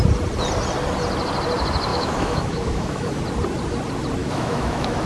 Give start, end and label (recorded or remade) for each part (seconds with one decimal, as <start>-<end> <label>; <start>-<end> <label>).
0.0-1.9 recorded; 1.9-3.2 remade; 3.2-4.2 recorded; 4.2-5.1 remade